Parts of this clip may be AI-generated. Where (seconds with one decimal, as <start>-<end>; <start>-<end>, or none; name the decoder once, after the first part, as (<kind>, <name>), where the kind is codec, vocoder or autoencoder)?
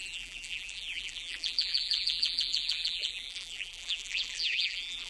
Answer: 0.0-5.1 (vocoder, BigVGAN v2)